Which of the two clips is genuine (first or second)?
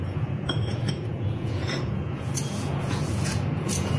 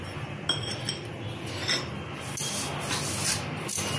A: second